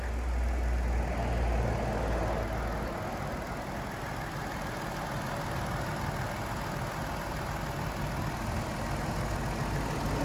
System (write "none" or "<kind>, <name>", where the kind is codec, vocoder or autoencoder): none